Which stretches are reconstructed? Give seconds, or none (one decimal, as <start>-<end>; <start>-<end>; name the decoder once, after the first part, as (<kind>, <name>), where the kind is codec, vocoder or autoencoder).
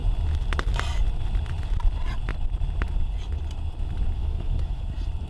4.2-4.8 (autoencoder, DAC-VAE)